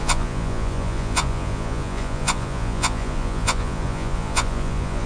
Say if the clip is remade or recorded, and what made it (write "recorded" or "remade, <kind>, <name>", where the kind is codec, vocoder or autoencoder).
remade, vocoder, Vocos